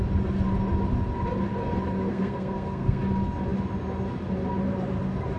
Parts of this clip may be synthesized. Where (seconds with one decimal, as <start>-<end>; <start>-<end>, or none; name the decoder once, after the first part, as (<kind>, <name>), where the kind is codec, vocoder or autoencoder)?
2.1-3.0 (codec, SNAC)